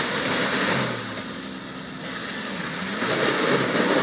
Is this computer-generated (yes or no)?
no